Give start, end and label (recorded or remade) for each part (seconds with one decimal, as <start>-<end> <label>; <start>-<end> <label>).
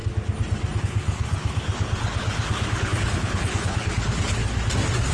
0.0-0.8 recorded; 0.8-4.4 remade; 4.4-5.1 recorded